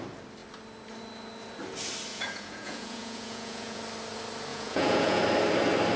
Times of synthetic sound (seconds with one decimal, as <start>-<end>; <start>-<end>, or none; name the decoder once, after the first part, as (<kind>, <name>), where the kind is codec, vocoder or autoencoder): 2.1-3.8 (vocoder, Vocos); 4.5-5.2